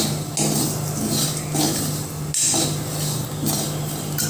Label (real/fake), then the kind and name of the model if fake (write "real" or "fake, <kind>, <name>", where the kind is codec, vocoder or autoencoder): real